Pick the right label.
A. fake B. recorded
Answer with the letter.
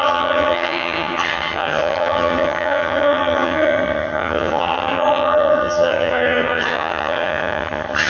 A